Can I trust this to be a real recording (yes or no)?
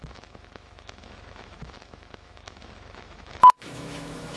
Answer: no